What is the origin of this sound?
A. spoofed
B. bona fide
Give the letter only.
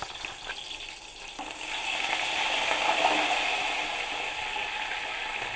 B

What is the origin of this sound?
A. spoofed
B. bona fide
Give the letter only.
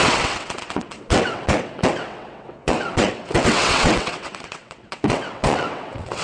A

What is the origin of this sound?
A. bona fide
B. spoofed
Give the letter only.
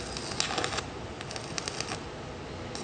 A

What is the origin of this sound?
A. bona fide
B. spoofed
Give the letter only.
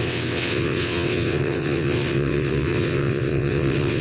B